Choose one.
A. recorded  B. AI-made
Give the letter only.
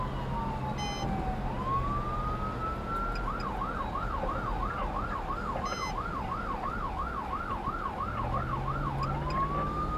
A